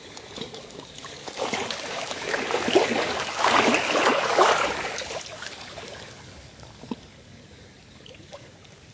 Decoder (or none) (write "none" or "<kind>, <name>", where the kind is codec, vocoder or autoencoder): codec, DAC